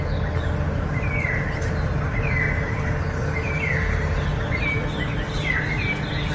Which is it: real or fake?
real